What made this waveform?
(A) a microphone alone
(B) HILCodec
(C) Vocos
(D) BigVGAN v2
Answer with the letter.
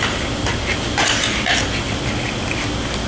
A